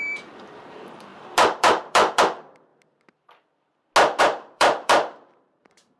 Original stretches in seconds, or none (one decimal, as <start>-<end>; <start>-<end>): 2.7-4.2